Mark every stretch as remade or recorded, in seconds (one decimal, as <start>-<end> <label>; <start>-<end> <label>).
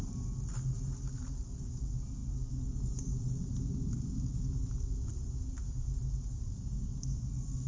0.0-7.7 recorded